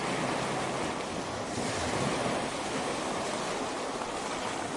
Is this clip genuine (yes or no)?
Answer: yes